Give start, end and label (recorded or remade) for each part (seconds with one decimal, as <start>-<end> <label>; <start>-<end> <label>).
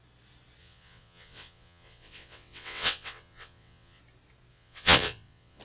0.0-0.6 recorded; 0.6-4.0 remade; 4.0-4.5 recorded; 4.5-5.6 remade